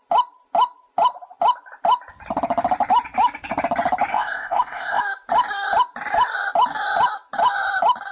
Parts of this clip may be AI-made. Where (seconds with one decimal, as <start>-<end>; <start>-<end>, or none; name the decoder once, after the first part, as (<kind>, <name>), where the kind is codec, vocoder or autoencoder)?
4.1-5.0 (codec, ZipCodec)